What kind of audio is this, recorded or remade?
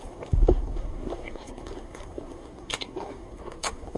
remade